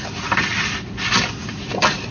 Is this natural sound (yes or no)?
yes